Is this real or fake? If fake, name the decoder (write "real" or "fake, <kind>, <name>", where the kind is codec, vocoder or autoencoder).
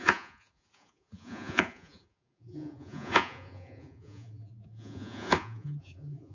fake, vocoder, Vocos